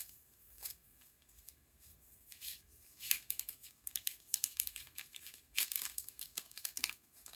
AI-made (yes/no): yes